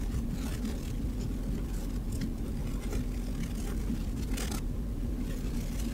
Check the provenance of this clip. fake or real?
real